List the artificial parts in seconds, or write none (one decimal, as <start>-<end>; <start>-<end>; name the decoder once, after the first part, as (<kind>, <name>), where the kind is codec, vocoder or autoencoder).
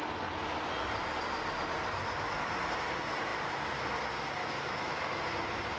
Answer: 4.4-5.2 (autoencoder, DAC-VAE)